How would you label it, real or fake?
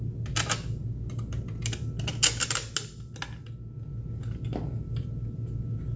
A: real